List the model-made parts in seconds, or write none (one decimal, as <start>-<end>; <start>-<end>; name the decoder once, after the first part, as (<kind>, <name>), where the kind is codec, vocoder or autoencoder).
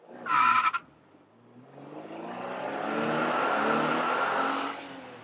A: none